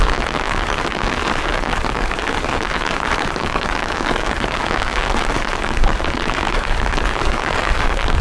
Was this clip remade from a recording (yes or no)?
yes